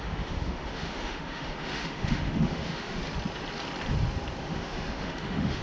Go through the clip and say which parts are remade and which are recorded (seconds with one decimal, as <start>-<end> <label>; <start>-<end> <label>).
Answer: 0.0-3.0 remade; 3.0-4.4 recorded; 4.4-5.6 remade